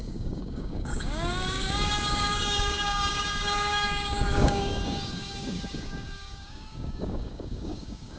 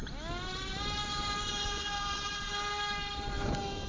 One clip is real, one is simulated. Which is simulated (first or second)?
first